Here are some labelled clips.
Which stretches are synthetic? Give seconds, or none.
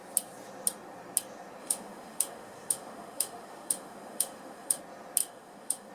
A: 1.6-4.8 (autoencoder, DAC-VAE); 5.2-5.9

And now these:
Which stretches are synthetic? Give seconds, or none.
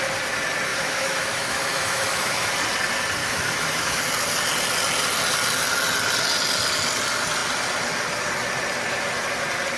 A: 0.7-2.5 (autoencoder, DAC-VAE); 3.2-4.0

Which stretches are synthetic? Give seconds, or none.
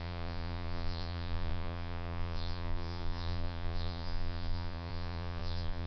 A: 0.0-5.9 (vocoder, Vocos)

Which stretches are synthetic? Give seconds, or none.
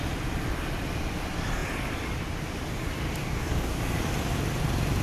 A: 3.2-3.8 (codec, DAC)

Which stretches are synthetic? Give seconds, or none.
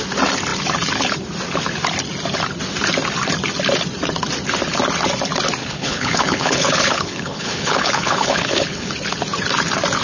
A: 5.6-8.9 (codec, HILCodec)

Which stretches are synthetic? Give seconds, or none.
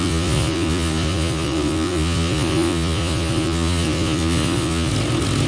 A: 0.0-4.9 (vocoder, Vocos)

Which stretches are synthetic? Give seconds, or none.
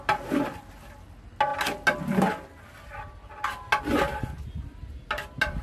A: none